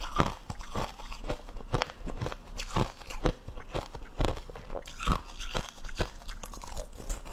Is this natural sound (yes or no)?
yes